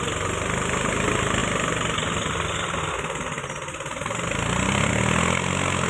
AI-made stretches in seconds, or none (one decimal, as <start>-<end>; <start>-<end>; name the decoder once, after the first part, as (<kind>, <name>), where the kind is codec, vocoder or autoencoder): none